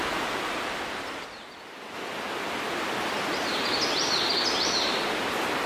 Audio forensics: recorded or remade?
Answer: recorded